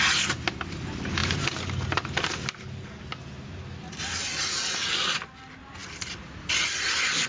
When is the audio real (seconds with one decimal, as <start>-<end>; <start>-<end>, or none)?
0.0-7.3